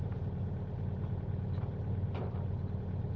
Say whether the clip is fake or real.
real